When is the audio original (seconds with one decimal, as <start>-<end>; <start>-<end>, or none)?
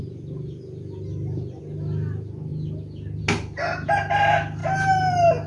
0.0-5.5